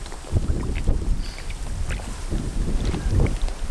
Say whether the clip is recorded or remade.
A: recorded